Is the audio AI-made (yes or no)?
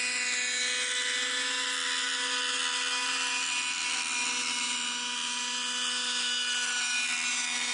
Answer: no